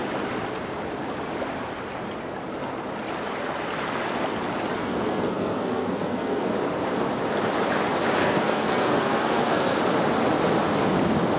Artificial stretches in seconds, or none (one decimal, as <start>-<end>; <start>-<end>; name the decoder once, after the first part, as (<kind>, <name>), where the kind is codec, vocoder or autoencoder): 4.8-6.5 (codec, SNAC); 8.2-9.8